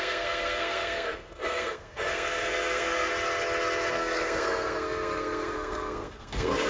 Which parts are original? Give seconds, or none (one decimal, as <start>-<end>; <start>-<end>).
3.1-3.9